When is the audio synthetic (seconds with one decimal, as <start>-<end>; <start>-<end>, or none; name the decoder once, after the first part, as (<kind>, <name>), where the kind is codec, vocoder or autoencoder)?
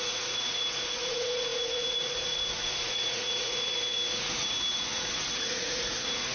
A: 0.0-6.3 (vocoder, Vocos)